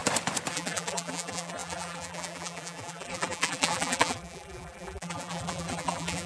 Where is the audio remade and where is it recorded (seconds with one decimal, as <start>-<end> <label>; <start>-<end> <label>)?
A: 0.0-0.5 recorded; 0.5-6.3 remade